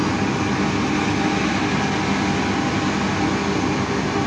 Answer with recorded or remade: recorded